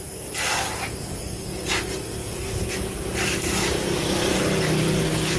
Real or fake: real